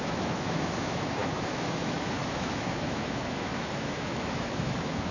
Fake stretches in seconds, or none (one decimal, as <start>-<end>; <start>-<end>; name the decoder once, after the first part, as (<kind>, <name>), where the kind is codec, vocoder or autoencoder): 0.0-5.1 (autoencoder, DAC-VAE)

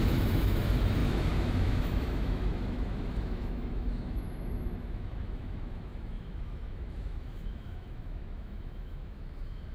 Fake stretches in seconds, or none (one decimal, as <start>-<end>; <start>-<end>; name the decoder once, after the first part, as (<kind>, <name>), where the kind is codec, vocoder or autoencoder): 0.0-9.7 (autoencoder, DAC-VAE)

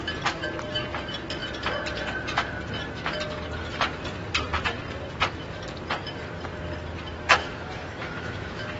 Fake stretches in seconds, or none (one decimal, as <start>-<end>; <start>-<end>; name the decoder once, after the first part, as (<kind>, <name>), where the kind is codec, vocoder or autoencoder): 7.4-8.8 (autoencoder, DAC-VAE)

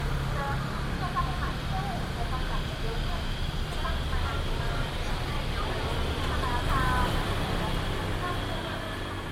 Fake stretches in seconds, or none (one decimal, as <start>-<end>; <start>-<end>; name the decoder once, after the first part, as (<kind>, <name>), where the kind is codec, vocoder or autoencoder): none

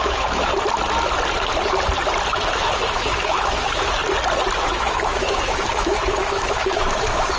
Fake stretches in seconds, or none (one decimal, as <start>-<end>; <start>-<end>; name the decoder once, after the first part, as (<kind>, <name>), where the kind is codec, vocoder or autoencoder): 0.0-0.5 (autoencoder, DAC-VAE); 2.3-4.0; 4.6-7.4

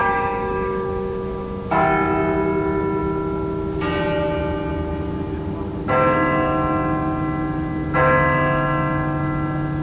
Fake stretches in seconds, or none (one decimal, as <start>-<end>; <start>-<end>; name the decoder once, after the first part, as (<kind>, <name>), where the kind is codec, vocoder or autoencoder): 0.0-1.7 (autoencoder, DAC-VAE)

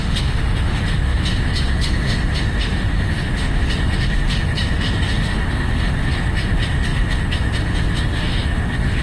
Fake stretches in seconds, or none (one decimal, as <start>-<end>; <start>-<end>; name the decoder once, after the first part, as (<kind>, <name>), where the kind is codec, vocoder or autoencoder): 0.0-9.0 (autoencoder, DAC-VAE)